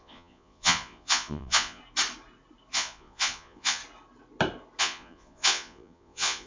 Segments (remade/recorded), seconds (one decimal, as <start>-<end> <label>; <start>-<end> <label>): 0.0-1.8 remade; 1.8-2.7 recorded; 2.7-3.8 remade; 3.8-4.8 recorded; 4.8-6.5 remade